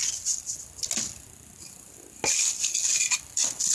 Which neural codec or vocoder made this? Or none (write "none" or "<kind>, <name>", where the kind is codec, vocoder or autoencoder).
none